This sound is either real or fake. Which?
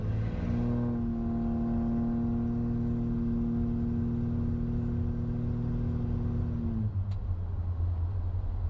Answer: real